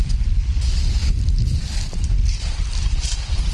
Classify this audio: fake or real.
real